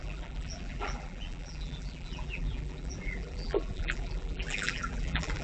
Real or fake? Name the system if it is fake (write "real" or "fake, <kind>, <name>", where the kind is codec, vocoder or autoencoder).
fake, vocoder, BigVGAN v2